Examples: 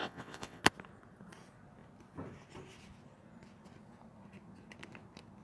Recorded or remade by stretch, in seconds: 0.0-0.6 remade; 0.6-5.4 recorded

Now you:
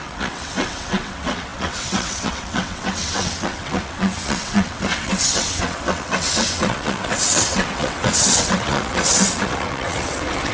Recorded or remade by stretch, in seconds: 0.0-10.5 remade

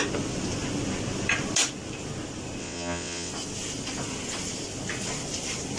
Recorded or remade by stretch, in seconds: 0.0-2.6 recorded; 2.6-3.3 remade; 3.3-5.8 recorded

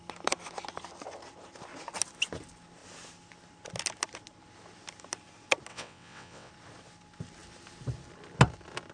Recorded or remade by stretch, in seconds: 0.0-5.7 recorded; 5.7-6.5 remade; 6.5-8.9 recorded

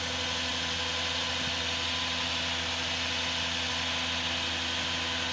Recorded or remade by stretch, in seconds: 0.0-5.3 recorded

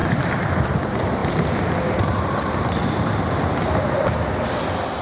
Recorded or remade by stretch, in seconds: 0.0-5.0 recorded

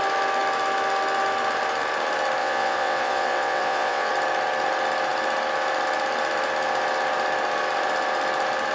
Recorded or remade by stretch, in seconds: 0.0-2.4 recorded; 2.4-4.1 remade; 4.1-8.7 recorded